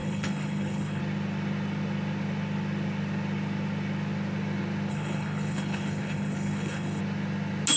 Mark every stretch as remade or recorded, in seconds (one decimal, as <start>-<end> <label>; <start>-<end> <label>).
0.0-1.0 remade; 1.0-4.9 recorded; 4.9-7.0 remade; 7.0-7.8 recorded